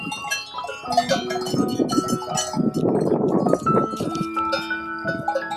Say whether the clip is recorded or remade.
recorded